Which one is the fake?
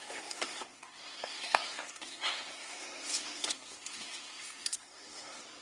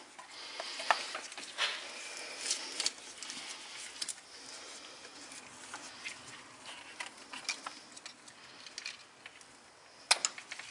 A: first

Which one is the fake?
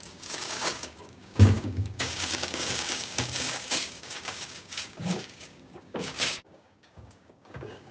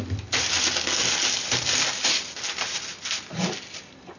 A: first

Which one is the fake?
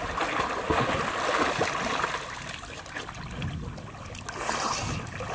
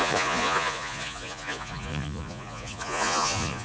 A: second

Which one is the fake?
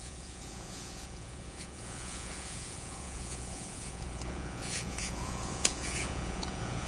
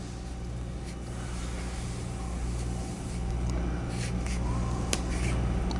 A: first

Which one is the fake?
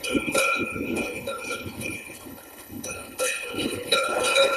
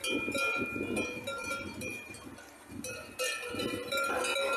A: first